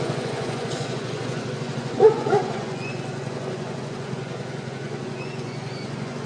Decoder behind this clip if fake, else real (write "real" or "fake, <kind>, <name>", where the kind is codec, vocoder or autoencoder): fake, vocoder, Vocos